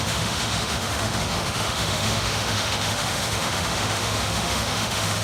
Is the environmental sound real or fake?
fake